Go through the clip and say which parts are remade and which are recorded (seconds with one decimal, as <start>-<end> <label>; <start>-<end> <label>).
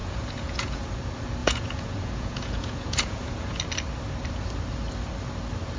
0.0-0.8 remade; 0.8-1.4 recorded; 1.4-3.6 remade; 3.6-5.8 recorded